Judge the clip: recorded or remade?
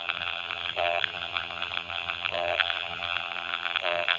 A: remade